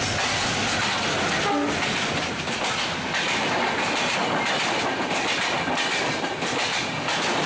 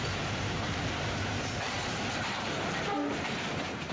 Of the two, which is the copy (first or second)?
second